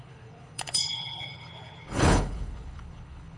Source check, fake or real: fake